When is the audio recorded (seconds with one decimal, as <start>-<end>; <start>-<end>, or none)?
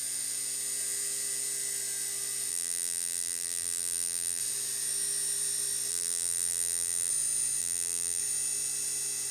0.0-2.5; 4.4-5.9; 7.1-7.6; 8.2-9.3